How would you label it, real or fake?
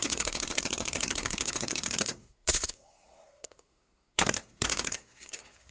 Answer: fake